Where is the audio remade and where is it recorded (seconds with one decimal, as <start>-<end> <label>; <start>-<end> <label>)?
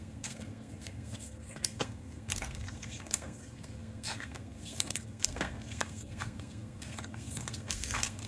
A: 0.0-8.3 remade